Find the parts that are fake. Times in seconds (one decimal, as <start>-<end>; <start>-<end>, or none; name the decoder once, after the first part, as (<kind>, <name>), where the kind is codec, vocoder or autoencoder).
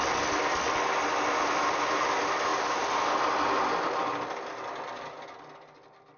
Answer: none